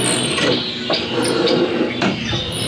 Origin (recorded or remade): recorded